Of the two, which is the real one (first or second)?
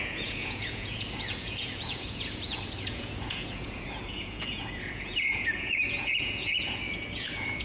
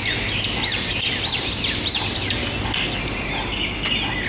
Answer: second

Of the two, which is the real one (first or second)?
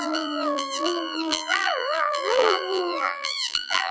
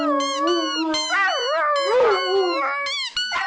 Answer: second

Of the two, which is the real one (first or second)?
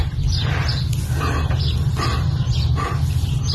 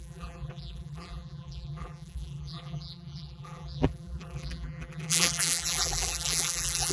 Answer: first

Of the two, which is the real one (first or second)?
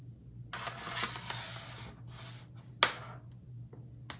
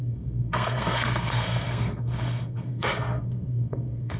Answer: first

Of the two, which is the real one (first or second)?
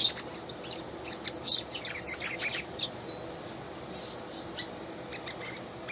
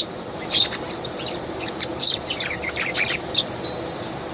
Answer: first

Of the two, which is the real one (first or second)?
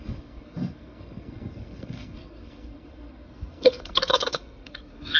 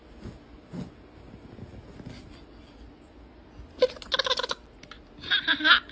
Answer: second